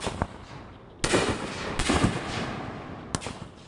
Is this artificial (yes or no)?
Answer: no